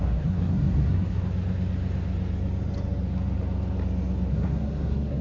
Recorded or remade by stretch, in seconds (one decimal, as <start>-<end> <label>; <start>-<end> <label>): 0.0-1.2 remade; 1.2-4.3 recorded; 4.3-5.2 remade